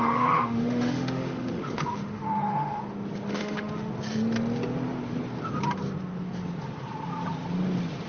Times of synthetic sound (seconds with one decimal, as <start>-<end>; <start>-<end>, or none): 0.0-2.8; 3.3-3.9